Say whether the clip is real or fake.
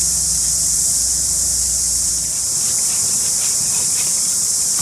real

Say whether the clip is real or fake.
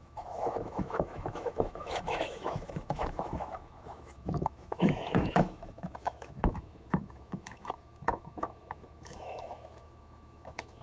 fake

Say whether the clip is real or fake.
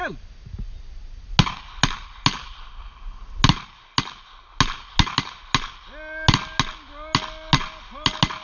real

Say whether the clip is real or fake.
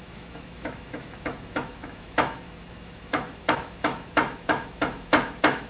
fake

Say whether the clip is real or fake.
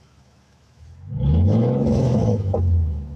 fake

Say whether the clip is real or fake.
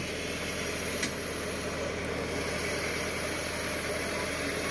real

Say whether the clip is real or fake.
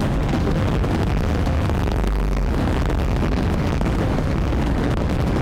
fake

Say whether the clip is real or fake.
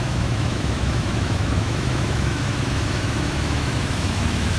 fake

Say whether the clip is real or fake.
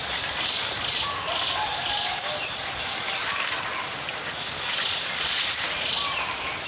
real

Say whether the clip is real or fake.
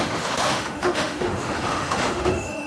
fake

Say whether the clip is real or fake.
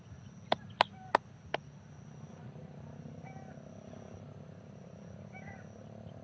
real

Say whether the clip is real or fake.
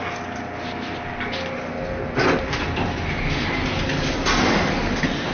real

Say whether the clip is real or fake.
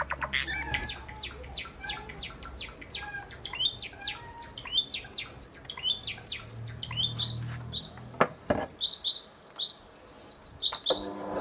real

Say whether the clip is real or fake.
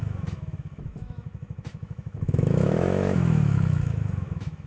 fake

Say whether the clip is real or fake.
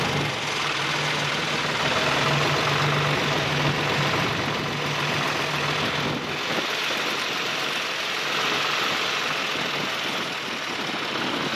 real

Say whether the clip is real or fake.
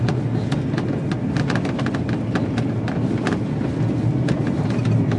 real